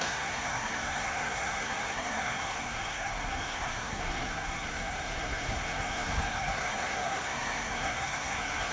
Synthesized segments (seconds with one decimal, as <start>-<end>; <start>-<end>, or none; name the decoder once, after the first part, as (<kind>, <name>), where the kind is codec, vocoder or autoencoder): 0.0-8.7 (codec, SNAC)